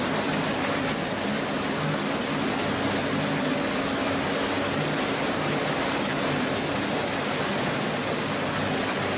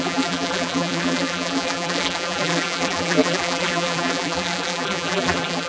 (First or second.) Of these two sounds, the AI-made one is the second